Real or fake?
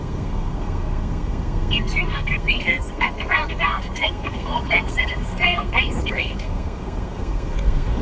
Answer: fake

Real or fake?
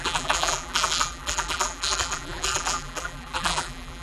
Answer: fake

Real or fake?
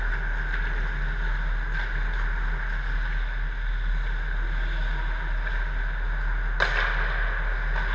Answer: real